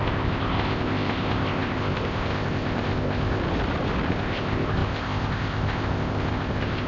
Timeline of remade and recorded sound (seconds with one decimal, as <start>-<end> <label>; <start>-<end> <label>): 0.0-3.4 remade; 3.4-4.1 recorded; 4.1-6.9 remade